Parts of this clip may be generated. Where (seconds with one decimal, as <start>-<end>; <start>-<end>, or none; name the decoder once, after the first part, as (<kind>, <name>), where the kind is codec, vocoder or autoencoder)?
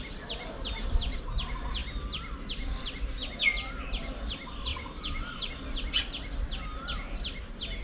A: 4.7-5.5 (vocoder, WaveNeXt)